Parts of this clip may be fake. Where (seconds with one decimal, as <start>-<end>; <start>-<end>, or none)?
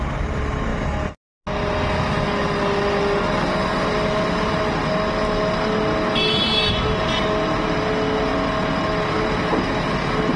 none